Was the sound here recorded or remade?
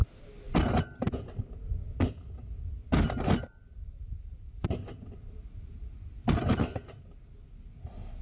recorded